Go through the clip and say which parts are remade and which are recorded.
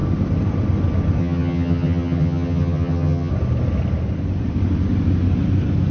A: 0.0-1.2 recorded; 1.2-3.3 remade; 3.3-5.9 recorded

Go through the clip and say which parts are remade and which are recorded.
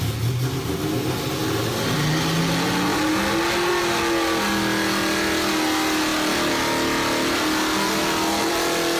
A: 0.0-9.0 recorded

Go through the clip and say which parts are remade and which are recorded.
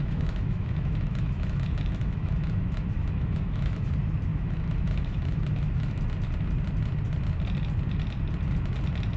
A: 0.0-3.9 remade; 3.9-4.3 recorded; 4.3-6.0 remade; 6.0-9.2 recorded